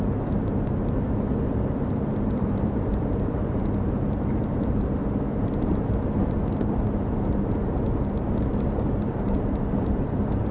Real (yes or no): no